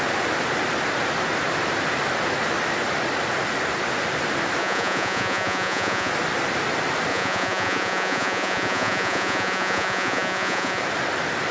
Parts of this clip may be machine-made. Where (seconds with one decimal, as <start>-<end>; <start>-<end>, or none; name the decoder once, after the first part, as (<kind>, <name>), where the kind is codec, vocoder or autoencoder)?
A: 4.6-6.1 (vocoder, Vocos); 7.1-10.8